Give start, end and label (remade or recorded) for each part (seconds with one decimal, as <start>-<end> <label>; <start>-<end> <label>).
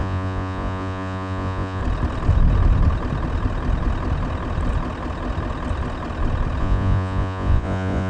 0.0-1.8 remade; 1.8-6.6 recorded; 6.6-8.1 remade